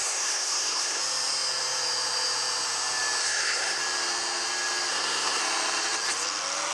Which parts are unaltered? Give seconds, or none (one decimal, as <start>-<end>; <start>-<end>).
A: 1.0-3.2; 3.8-4.9; 5.4-6.7